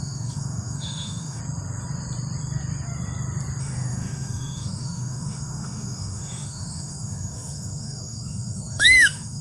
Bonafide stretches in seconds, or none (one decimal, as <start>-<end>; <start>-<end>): 1.4-3.6

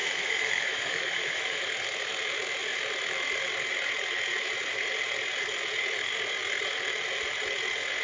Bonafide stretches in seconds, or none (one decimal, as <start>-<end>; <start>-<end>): 1.6-8.0

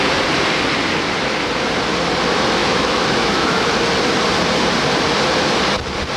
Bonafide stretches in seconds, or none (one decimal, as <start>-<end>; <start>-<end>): 0.0-2.6; 3.7-6.2

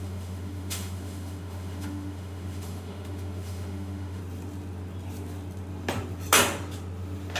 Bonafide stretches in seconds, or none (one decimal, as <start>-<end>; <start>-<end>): 4.2-7.4

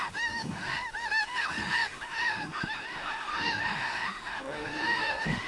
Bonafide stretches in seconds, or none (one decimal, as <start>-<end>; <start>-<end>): none

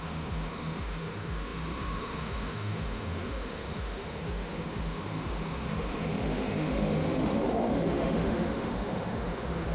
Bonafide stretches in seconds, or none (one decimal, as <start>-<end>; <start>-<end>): none

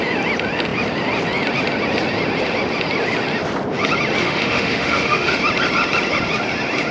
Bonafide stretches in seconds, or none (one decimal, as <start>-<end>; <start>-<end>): 0.0-4.2; 5.4-6.9

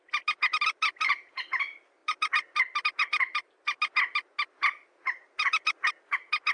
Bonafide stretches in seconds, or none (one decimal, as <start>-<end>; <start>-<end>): 0.0-6.5